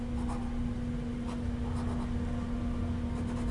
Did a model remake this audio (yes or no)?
no